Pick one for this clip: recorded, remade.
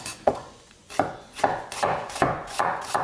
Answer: remade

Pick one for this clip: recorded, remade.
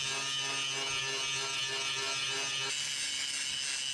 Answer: recorded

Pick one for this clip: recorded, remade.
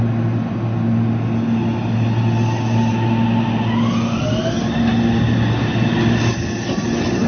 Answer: recorded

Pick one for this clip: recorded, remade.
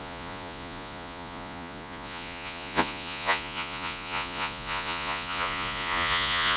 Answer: remade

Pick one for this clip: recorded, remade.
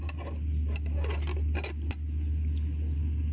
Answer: recorded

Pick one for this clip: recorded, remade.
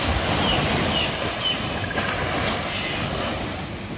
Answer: recorded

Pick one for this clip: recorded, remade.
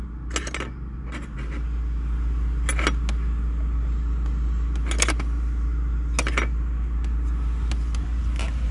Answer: recorded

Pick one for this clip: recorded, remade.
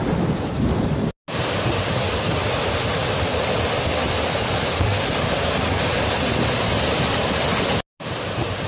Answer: recorded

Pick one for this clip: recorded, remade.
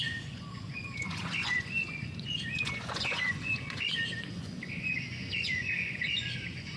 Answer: remade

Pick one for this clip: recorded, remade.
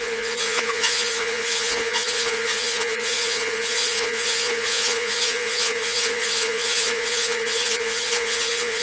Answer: remade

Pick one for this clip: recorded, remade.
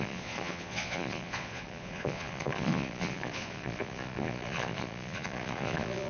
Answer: remade